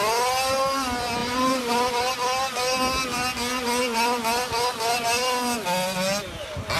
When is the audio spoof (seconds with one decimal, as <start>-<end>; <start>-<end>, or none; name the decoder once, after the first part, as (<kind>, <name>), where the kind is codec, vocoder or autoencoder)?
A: 1.2-2.1 (vocoder, BigVGAN v2)